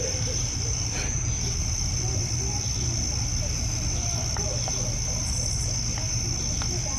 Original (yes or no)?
yes